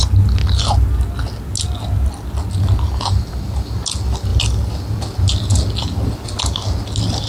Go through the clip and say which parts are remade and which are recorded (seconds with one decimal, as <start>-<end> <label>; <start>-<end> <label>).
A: 0.0-7.3 recorded